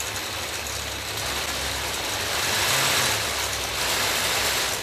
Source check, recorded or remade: recorded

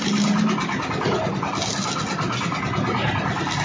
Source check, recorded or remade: recorded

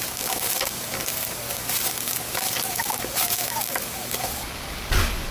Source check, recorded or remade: remade